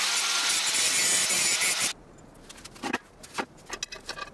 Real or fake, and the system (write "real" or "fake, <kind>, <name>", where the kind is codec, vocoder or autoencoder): real